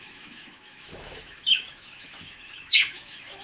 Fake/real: fake